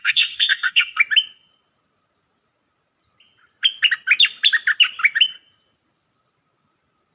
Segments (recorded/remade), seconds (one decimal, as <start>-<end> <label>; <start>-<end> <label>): 0.0-1.0 remade; 1.0-7.1 recorded